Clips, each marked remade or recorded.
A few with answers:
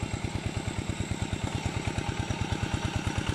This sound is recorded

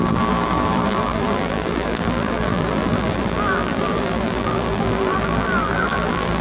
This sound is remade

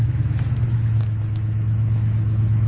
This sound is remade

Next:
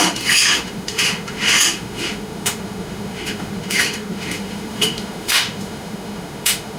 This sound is remade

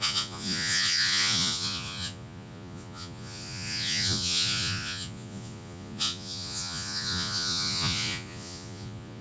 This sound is remade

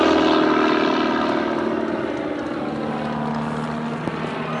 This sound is recorded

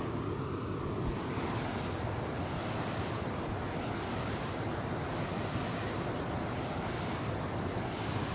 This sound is recorded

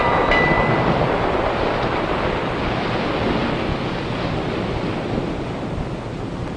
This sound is recorded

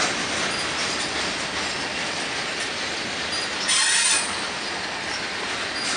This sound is recorded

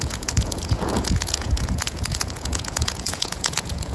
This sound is remade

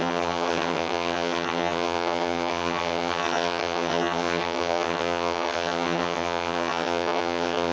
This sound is remade